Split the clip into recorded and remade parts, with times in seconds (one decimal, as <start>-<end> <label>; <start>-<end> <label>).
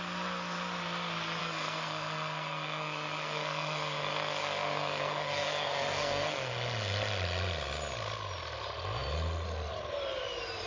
0.0-1.4 recorded; 1.4-6.5 remade; 6.5-10.7 recorded